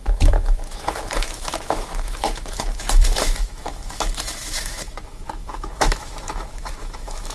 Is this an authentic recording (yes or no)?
no